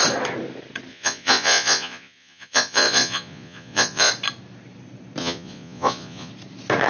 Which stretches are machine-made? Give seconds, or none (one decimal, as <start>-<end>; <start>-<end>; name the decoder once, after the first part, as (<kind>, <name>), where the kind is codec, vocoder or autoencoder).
0.9-4.1 (vocoder, Vocos); 5.2-6.3